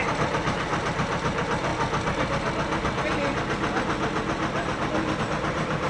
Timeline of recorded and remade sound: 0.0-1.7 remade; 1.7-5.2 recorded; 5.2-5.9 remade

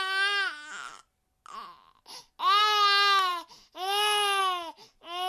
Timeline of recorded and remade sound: 0.0-5.3 recorded

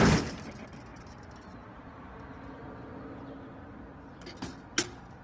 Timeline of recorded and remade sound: 0.0-0.9 recorded; 0.9-2.1 remade; 2.1-5.2 recorded

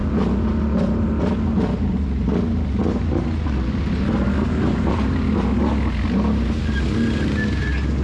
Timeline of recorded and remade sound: 0.0-8.0 recorded

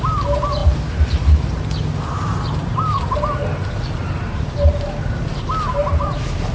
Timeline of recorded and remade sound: 0.0-0.6 recorded; 0.6-1.2 remade; 1.2-2.6 recorded; 2.6-4.7 remade; 4.7-5.8 recorded; 5.8-6.5 remade

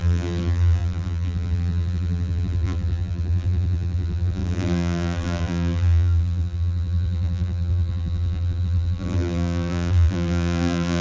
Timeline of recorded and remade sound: 0.0-11.0 remade

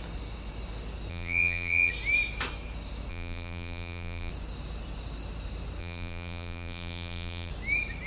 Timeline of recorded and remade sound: 0.0-1.1 recorded; 1.1-1.9 remade; 1.9-3.1 recorded; 3.1-4.3 remade; 4.3-5.8 recorded; 5.8-7.5 remade; 7.5-8.1 recorded